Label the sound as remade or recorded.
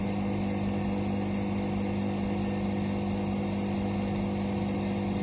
recorded